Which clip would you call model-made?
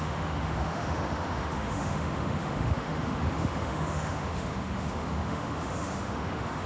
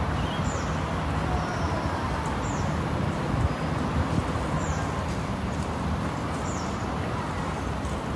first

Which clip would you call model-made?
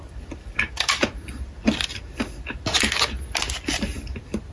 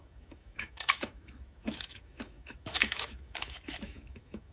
second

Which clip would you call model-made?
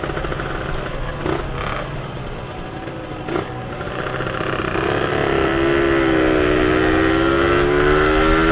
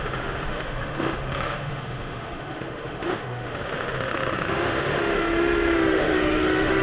second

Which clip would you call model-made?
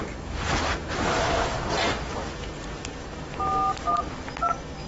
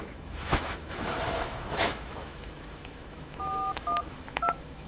second